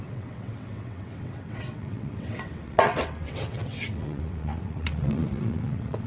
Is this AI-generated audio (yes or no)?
yes